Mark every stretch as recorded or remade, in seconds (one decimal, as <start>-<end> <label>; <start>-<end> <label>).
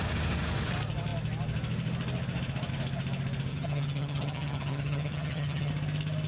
0.0-3.5 recorded; 3.5-5.7 remade; 5.7-6.3 recorded